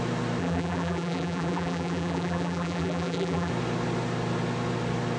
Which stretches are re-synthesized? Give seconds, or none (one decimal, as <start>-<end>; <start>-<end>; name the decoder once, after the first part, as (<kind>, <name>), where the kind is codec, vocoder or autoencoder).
0.4-3.5 (vocoder, BigVGAN v2)